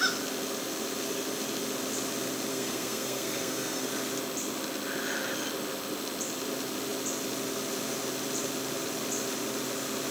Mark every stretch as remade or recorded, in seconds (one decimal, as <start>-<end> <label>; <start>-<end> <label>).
0.0-2.5 recorded; 2.5-3.9 remade; 3.9-10.1 recorded